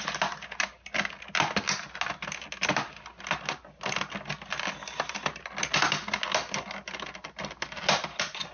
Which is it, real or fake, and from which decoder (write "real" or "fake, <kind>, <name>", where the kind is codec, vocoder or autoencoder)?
real